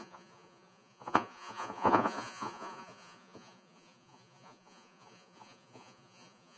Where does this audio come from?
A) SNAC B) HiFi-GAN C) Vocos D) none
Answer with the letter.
C